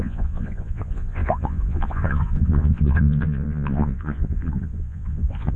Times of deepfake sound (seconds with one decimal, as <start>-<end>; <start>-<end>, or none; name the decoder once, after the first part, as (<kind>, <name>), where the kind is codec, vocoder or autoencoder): 0.0-5.6 (vocoder, Vocos)

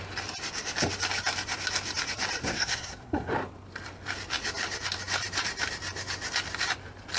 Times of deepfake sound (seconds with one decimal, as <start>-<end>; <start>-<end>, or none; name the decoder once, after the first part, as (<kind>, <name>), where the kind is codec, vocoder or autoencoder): 2.4-3.3 (codec, SNAC)

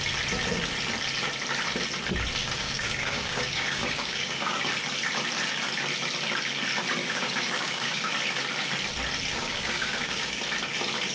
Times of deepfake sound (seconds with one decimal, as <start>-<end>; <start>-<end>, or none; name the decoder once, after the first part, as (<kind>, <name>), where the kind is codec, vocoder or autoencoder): 2.4-4.7 (codec, DAC); 7.0-8.1; 9.3-10.4

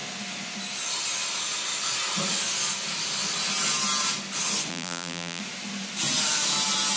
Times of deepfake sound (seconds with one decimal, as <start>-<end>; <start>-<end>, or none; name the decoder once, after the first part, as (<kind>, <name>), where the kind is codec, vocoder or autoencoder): 4.7-5.4 (vocoder, BigVGAN v2)

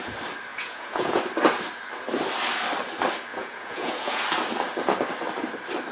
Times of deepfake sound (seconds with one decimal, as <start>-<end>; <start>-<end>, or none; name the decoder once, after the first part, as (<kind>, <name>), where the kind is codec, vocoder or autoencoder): 0.5-1.2 (vocoder, Vocos); 3.3-4.2

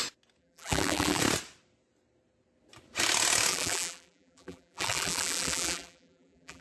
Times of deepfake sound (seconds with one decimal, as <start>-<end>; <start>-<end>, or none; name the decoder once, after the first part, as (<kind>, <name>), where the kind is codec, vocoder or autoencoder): 0.4-1.2 (vocoder, BigVGAN v2); 3.5-6.6